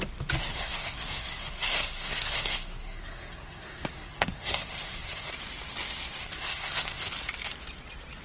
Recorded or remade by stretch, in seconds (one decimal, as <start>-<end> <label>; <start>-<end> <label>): 0.0-0.4 recorded; 0.4-5.3 remade; 5.3-6.2 recorded; 6.2-7.1 remade; 7.1-8.2 recorded